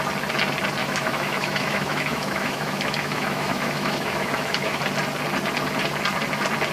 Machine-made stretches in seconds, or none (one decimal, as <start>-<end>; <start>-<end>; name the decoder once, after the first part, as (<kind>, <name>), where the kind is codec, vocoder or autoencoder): 0.8-4.8 (autoencoder, DAC-VAE)

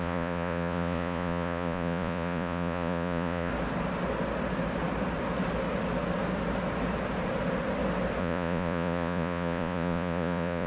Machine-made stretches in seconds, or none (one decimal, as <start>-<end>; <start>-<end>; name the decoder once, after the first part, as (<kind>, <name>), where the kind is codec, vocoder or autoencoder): 0.0-3.5 (vocoder, Vocos); 8.2-10.7